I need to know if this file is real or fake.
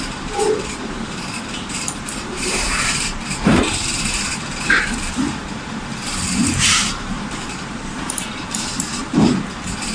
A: fake